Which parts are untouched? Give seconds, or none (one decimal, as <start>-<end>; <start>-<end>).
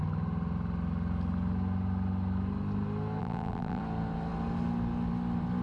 0.0-3.2; 3.8-5.6